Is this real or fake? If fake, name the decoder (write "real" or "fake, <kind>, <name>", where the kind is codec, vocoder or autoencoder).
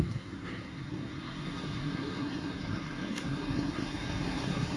fake, codec, SNAC